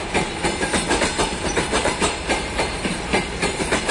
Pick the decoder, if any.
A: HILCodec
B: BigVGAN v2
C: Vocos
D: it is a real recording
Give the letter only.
B